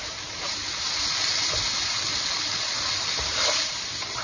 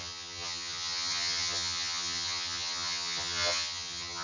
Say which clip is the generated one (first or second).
second